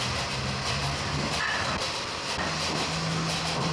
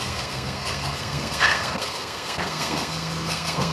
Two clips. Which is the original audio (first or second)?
first